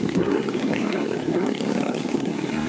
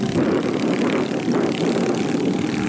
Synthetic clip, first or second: first